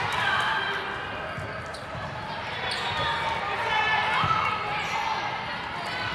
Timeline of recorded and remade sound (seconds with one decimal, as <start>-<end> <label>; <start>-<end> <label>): 0.0-1.7 recorded; 1.7-2.7 remade; 2.7-4.0 recorded; 4.0-4.5 remade; 4.5-6.1 recorded